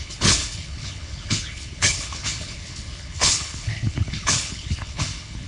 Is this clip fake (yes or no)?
yes